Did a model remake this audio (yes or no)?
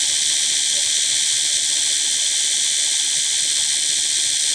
no